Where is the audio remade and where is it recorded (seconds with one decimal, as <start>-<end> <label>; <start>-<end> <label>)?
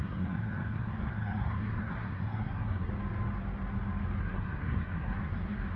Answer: 0.0-2.9 remade; 2.9-4.2 recorded; 4.2-5.8 remade